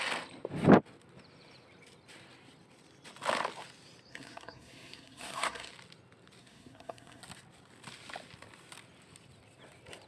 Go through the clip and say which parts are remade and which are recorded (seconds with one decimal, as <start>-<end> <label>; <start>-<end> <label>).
0.0-4.1 recorded; 4.1-5.7 remade; 5.7-6.4 recorded; 6.4-7.2 remade; 7.2-10.1 recorded